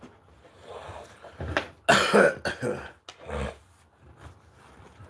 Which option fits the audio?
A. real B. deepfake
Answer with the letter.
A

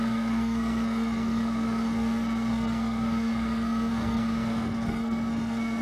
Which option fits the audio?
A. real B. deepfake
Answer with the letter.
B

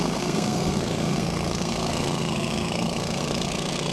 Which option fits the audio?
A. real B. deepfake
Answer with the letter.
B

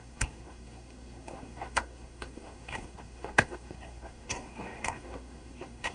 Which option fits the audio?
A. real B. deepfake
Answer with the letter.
B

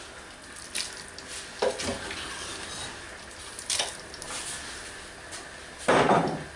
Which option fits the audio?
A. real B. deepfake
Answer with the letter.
A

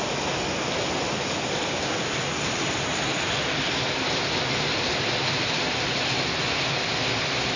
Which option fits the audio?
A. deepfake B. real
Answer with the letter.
B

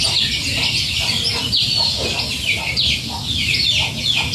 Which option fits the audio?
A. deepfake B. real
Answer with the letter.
B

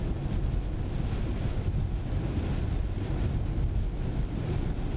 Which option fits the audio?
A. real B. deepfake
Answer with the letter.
A